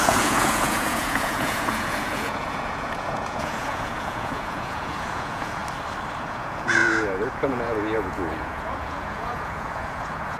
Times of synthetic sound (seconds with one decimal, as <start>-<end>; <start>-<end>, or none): 0.0-5.6; 6.2-10.4